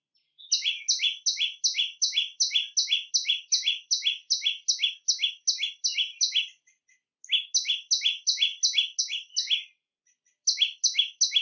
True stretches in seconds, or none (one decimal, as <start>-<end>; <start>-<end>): 0.0-11.4